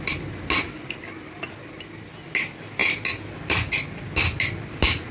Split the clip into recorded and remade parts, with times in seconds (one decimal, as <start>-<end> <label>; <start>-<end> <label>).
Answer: 0.0-5.1 recorded